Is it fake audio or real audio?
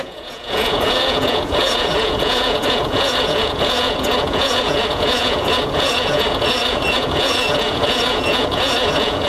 fake